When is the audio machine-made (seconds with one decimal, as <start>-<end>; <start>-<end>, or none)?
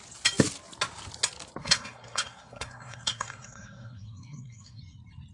1.6-4.8